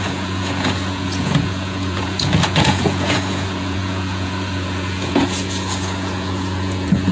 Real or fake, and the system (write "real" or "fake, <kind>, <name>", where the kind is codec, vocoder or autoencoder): fake, vocoder, Vocos